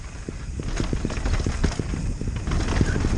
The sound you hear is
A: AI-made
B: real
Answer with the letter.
B